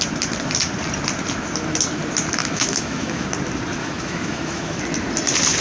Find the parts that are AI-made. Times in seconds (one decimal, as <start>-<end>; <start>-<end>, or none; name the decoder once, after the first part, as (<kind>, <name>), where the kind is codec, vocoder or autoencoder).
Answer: 2.4-3.3 (autoencoder, DAC-VAE); 3.8-4.8

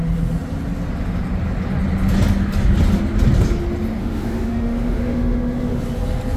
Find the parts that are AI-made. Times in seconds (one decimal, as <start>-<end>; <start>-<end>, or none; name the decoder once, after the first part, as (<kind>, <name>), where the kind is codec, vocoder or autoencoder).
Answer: 4.0-5.8 (autoencoder, DAC-VAE)